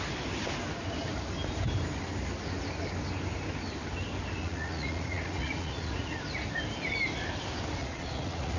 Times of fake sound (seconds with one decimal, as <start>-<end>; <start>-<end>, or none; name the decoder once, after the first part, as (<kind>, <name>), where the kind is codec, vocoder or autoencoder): 4.4-6.2 (vocoder, Vocos); 7.8-8.6